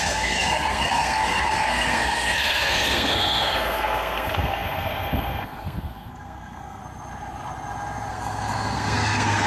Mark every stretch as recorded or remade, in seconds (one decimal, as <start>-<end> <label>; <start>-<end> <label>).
0.0-6.8 remade; 6.8-8.1 recorded; 8.1-9.5 remade